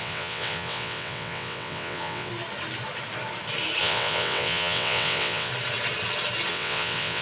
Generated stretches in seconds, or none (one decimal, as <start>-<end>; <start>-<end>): 0.0-2.3; 3.8-5.5; 6.5-7.2